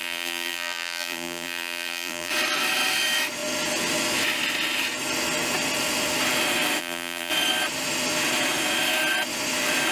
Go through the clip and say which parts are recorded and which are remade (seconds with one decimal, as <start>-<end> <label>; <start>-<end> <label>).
0.0-2.3 remade; 2.3-6.8 recorded; 6.8-7.3 remade; 7.3-9.9 recorded